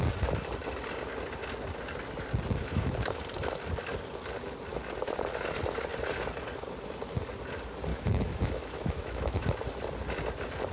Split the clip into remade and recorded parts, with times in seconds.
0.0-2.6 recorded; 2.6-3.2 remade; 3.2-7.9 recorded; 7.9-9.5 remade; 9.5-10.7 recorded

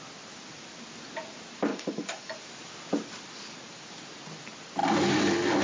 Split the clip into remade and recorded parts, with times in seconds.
0.0-1.7 recorded; 1.7-2.4 remade; 2.4-5.6 recorded

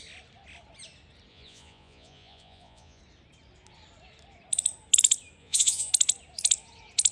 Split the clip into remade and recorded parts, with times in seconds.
0.0-1.3 recorded; 1.3-3.0 remade; 3.0-5.4 recorded; 5.4-5.9 remade; 5.9-7.1 recorded

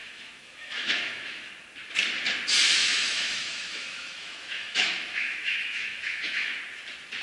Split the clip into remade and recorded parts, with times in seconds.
0.0-1.5 remade; 1.5-2.8 recorded; 2.8-6.6 remade; 6.6-7.2 recorded